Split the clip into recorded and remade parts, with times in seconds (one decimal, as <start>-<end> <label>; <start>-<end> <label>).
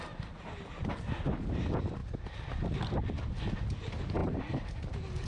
0.0-2.0 recorded; 2.0-3.4 remade; 3.4-5.3 recorded